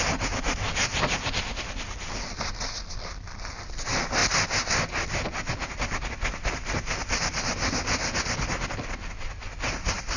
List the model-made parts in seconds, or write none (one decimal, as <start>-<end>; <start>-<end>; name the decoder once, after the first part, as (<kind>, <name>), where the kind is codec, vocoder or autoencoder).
none